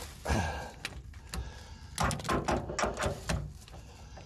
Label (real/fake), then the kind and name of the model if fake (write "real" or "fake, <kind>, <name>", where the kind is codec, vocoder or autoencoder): real